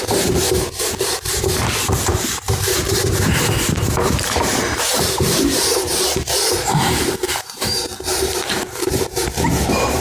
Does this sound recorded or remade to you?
remade